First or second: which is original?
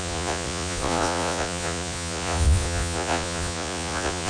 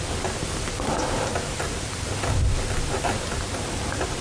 second